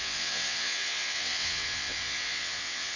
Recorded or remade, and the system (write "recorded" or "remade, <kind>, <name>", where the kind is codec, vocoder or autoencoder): remade, vocoder, WaveNeXt